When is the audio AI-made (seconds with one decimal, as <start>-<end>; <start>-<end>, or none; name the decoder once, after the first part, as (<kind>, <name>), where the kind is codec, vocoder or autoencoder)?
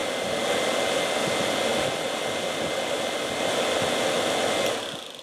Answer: none